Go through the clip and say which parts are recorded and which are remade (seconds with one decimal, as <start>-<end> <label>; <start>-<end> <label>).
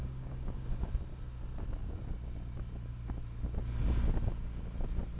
0.0-0.9 remade; 0.9-5.2 recorded